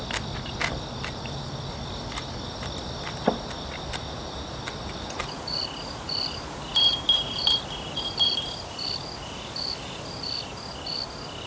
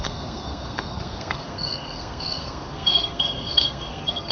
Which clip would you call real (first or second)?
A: first